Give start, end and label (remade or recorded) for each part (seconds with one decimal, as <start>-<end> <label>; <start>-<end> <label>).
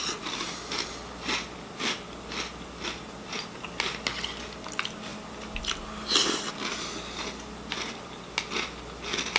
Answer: 0.0-9.4 recorded